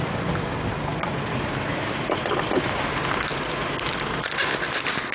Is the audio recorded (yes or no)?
yes